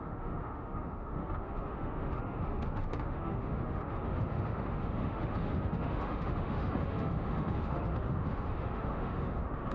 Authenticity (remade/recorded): remade